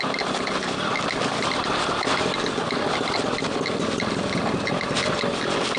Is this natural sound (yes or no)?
yes